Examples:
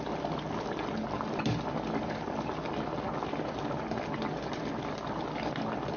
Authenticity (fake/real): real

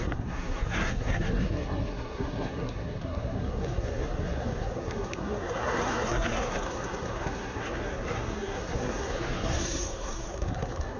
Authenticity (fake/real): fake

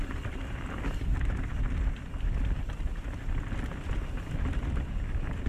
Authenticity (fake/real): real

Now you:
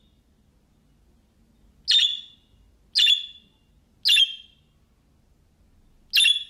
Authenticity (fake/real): real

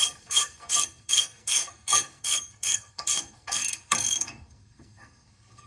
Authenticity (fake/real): fake